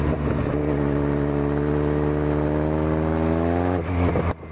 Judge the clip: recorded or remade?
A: recorded